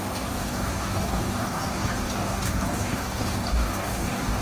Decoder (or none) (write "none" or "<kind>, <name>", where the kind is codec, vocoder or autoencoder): codec, DAC